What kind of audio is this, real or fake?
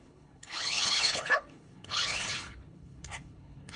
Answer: fake